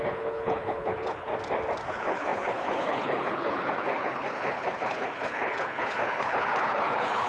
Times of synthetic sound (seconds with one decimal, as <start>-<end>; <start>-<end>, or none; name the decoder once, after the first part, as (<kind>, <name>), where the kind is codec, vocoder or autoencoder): 0.0-1.3 (codec, HILCodec); 1.9-7.3